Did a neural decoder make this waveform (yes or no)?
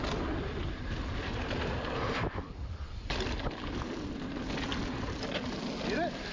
no